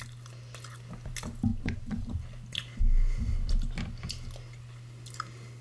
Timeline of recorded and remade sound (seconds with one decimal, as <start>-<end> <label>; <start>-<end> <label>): 0.0-1.5 recorded; 1.5-2.1 remade; 2.1-5.6 recorded